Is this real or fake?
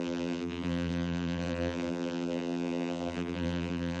fake